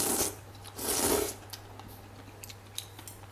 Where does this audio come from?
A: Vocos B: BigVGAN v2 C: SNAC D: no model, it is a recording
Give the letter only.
D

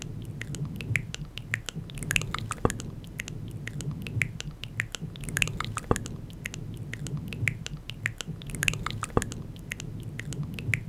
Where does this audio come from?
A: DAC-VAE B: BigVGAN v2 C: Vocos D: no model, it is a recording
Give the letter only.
D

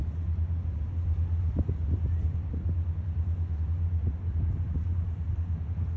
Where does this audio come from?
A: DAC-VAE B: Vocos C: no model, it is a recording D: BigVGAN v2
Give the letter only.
C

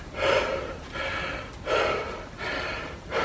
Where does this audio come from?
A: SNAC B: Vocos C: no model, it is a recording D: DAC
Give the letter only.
C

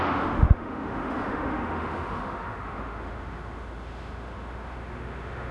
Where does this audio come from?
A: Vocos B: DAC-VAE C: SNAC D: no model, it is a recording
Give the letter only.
B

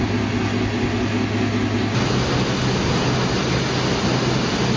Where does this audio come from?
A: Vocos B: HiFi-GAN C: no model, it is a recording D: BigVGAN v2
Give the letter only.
C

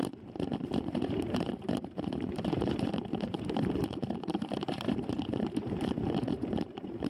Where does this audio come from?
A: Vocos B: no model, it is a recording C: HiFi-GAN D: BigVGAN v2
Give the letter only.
D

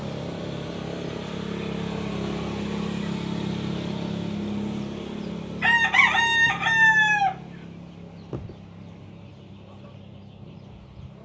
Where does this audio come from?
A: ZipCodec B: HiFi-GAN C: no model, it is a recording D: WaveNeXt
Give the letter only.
C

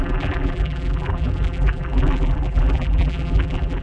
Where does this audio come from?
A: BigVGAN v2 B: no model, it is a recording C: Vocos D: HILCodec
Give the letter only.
A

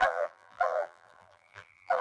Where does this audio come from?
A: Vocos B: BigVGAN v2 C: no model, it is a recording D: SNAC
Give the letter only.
B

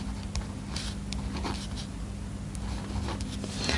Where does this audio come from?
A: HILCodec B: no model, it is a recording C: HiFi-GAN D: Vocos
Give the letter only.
B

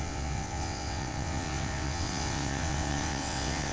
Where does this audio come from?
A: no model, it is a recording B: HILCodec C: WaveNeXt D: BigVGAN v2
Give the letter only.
C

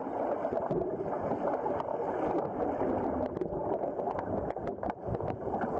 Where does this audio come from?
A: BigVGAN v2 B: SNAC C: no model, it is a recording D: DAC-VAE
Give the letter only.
C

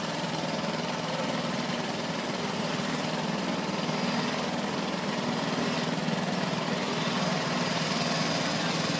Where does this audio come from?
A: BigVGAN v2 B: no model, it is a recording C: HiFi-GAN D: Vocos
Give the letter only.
B